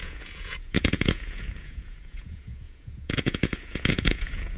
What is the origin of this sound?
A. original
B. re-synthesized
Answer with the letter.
B